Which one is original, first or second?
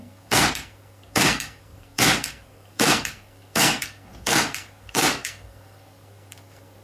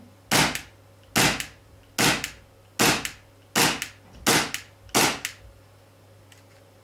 second